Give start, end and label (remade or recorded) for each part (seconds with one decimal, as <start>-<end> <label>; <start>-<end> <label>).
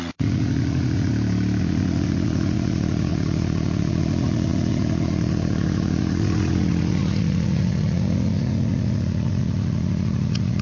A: 0.0-1.1 remade; 1.1-1.6 recorded; 1.6-10.6 remade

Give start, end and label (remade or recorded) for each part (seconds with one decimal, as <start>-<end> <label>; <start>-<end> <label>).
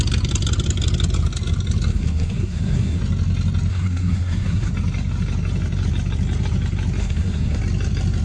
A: 0.0-1.9 recorded; 1.9-3.0 remade; 3.0-3.7 recorded; 3.7-4.7 remade; 4.7-7.0 recorded; 7.0-7.6 remade; 7.6-8.2 recorded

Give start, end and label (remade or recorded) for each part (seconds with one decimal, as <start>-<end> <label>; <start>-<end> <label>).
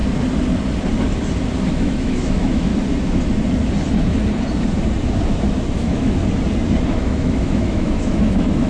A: 0.0-1.7 recorded; 1.7-2.7 remade; 2.7-5.7 recorded; 5.7-6.2 remade; 6.2-6.9 recorded; 6.9-8.7 remade